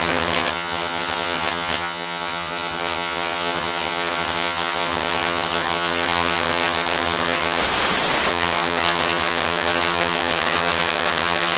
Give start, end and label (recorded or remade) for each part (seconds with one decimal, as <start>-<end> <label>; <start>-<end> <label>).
0.0-7.6 remade; 7.6-8.3 recorded; 8.3-11.6 remade